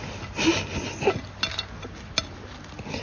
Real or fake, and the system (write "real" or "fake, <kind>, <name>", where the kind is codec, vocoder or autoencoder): real